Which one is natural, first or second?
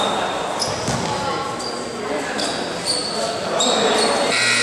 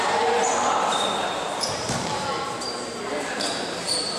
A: first